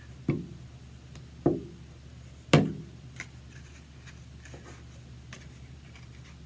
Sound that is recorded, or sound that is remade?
recorded